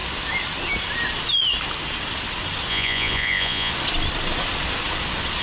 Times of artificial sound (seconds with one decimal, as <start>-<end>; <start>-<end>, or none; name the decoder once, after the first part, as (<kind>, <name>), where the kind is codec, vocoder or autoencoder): 2.7-3.7 (vocoder, Vocos)